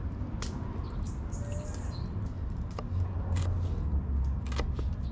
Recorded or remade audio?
recorded